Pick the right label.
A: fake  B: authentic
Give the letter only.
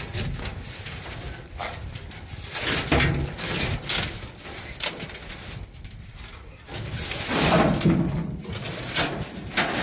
B